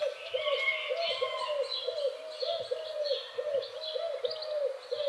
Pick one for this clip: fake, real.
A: real